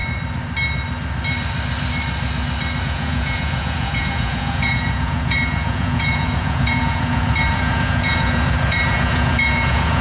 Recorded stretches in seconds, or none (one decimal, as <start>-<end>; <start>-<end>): 0.0-2.8